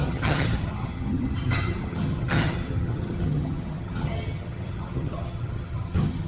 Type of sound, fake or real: fake